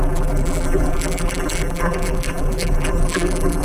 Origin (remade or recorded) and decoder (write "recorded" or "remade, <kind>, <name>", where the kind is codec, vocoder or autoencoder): remade, vocoder, BigVGAN v2